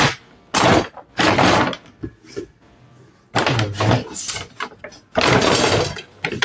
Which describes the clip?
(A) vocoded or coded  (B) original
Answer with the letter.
B